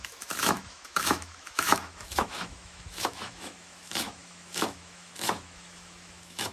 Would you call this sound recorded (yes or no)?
no